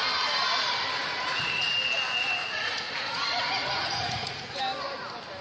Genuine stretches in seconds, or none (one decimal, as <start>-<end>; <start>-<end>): 0.0-1.0; 1.7-2.4; 4.6-5.4